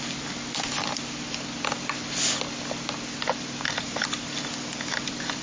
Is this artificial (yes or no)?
no